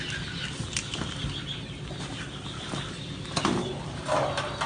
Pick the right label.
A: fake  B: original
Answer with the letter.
B